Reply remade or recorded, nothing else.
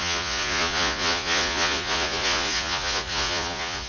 remade